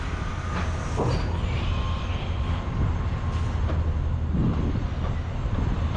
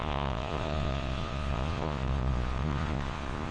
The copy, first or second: second